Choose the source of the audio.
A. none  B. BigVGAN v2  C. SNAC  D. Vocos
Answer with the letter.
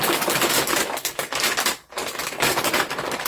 B